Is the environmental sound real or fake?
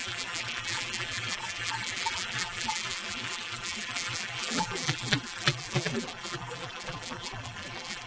fake